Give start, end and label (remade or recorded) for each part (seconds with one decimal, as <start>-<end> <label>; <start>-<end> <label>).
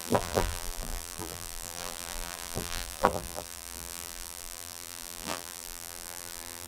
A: 0.0-6.7 remade